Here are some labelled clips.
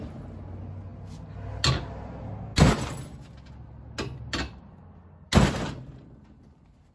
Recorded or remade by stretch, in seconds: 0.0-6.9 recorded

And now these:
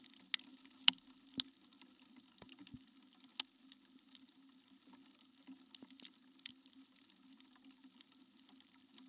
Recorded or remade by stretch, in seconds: 0.0-0.5 recorded; 0.5-1.2 remade; 1.2-9.1 recorded

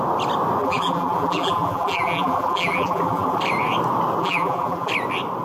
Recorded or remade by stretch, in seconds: 0.0-0.6 recorded; 0.6-3.4 remade; 3.4-4.2 recorded; 4.2-4.9 remade; 4.9-5.4 recorded